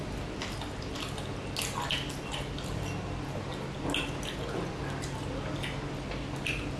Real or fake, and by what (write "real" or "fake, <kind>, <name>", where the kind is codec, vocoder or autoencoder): real